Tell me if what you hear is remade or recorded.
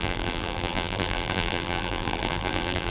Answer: remade